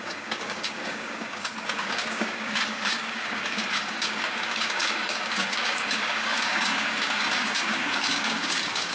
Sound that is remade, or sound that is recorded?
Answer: remade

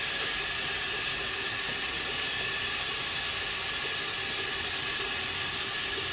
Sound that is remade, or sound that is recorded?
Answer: recorded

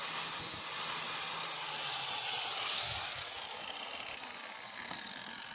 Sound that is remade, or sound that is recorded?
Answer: recorded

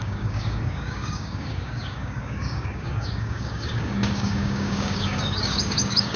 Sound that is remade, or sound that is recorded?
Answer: remade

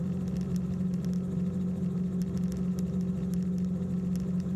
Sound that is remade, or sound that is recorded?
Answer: recorded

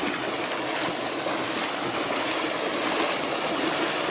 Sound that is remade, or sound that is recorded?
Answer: recorded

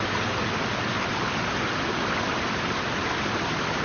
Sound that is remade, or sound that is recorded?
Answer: recorded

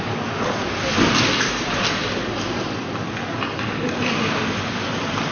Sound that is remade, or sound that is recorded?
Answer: recorded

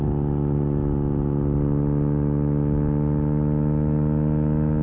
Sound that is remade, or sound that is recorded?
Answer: recorded